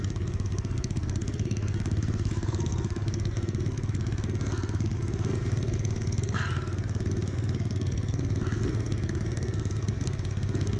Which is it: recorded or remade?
remade